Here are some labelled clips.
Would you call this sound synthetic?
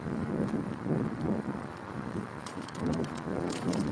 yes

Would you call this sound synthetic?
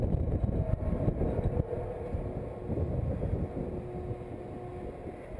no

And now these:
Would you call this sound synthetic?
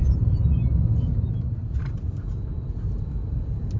no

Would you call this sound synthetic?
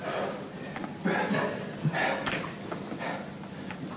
no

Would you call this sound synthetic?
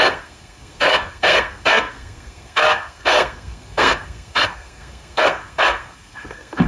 yes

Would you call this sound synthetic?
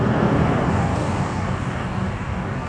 yes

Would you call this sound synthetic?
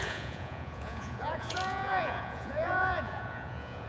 yes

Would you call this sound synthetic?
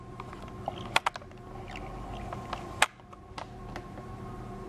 no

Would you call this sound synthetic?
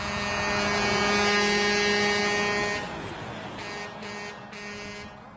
no